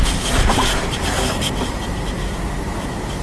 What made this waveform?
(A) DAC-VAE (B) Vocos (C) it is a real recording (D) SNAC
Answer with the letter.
C